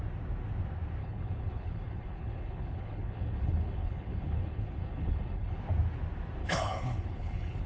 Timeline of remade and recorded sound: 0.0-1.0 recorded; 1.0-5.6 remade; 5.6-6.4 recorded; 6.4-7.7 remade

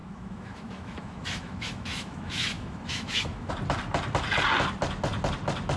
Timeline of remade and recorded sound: 0.0-3.5 remade; 3.5-5.8 recorded

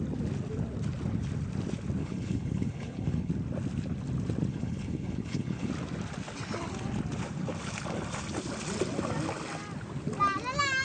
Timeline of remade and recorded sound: 0.0-2.0 recorded; 2.0-3.3 remade; 3.3-4.5 recorded; 4.5-5.7 remade; 5.7-10.8 recorded